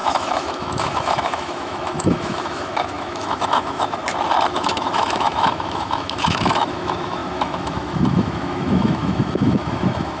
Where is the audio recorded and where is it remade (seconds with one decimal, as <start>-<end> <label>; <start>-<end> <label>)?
0.0-4.0 remade; 4.0-4.5 recorded; 4.5-10.2 remade